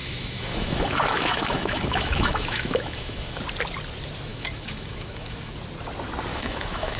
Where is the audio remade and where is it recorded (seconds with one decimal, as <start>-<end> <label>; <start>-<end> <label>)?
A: 0.0-3.4 remade; 3.4-4.3 recorded; 4.3-5.5 remade; 5.5-6.3 recorded; 6.3-7.0 remade